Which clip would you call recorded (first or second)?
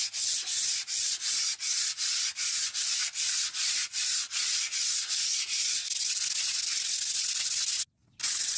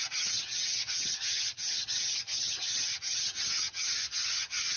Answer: first